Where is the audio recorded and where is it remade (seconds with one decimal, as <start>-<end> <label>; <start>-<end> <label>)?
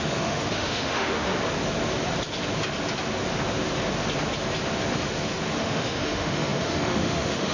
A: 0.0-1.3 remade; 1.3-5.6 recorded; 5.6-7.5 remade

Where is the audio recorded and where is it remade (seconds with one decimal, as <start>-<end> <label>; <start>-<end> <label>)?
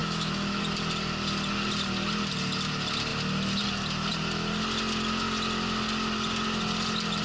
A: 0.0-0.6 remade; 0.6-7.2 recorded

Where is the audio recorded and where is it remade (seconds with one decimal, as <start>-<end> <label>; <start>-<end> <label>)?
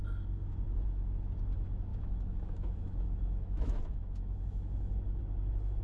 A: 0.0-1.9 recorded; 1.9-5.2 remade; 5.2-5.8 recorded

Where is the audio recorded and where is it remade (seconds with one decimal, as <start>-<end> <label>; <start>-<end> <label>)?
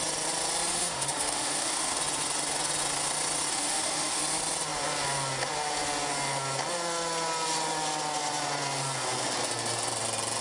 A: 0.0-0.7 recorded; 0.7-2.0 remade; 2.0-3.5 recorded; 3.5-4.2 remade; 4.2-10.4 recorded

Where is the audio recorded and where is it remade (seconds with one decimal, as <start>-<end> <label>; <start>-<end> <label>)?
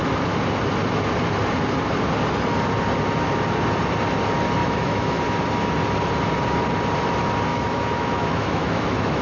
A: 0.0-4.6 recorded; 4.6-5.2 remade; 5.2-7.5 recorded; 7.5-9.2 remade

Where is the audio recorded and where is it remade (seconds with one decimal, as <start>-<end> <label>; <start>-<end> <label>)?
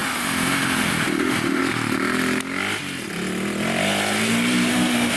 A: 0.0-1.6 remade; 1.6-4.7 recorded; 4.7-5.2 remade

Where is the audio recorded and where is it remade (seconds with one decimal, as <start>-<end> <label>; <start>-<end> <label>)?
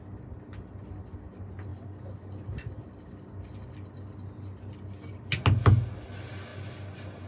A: 0.0-7.3 recorded